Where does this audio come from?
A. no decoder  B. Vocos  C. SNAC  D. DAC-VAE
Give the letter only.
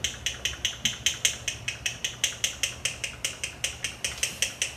A